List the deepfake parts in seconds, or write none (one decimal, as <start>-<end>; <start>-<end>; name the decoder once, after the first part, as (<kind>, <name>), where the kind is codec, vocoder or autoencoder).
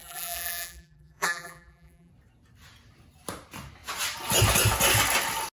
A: 0.0-2.1 (vocoder, BigVGAN v2)